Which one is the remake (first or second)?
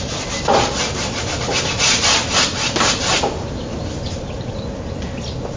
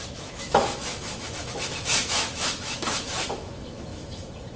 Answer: second